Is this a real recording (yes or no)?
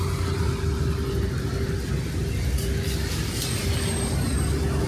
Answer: yes